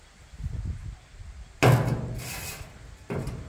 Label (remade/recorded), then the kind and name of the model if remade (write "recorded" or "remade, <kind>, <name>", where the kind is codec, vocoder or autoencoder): recorded